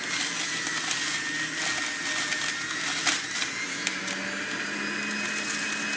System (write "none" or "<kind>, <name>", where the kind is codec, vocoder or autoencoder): none